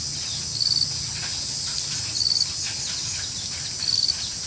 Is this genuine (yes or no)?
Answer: yes